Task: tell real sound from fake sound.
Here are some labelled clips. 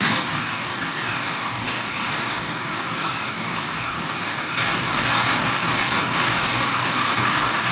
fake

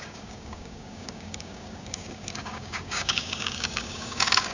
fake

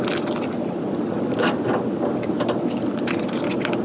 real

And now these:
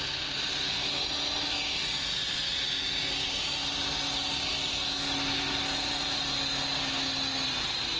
real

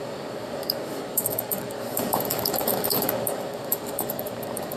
fake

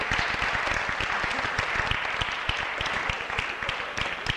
real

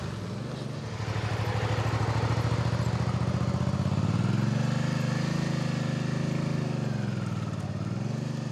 real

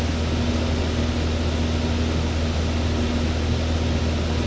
real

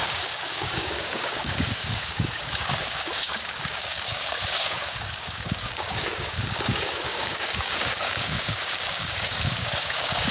fake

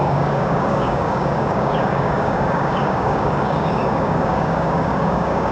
fake